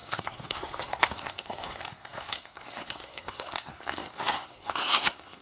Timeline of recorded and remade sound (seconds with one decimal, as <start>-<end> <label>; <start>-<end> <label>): 0.0-5.4 remade